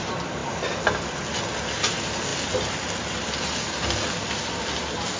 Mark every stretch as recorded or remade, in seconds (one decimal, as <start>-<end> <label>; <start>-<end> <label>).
0.0-5.2 recorded